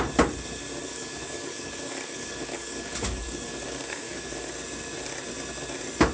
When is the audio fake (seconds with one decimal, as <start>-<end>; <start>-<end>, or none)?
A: 0.8-4.5